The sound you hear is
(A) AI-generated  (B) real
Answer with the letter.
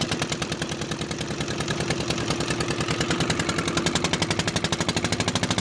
B